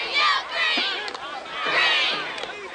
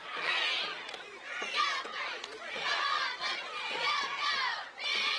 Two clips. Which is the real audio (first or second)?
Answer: first